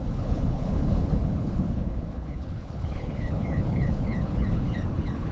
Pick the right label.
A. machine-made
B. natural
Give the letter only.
A